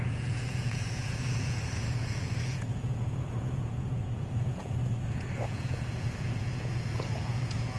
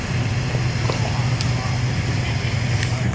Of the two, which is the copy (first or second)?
first